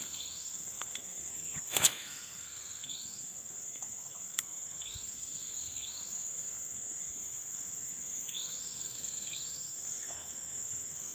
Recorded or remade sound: remade